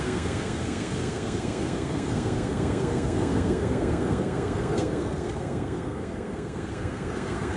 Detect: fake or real fake